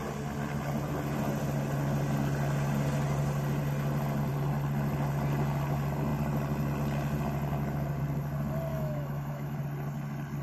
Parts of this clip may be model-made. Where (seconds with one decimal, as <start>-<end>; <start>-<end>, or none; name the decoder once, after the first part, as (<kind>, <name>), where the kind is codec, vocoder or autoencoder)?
8.7-9.6 (autoencoder, DAC-VAE)